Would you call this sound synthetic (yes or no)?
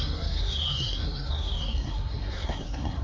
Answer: yes